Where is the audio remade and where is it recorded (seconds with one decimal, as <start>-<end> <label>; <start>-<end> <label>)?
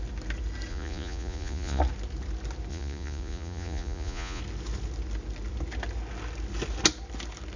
0.0-0.7 recorded; 0.7-1.8 remade; 1.8-2.7 recorded; 2.7-4.4 remade; 4.4-7.6 recorded